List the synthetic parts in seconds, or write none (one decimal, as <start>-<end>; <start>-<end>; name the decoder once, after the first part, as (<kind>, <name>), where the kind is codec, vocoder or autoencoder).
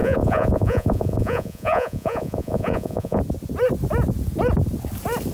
0.0-3.2 (vocoder, Vocos)